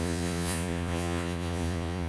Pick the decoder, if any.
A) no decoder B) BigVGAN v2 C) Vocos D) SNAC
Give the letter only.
C